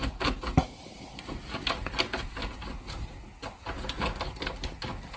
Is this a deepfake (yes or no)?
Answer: no